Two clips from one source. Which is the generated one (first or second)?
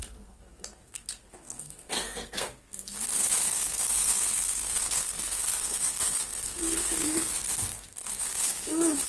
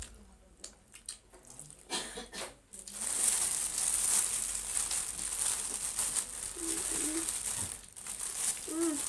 first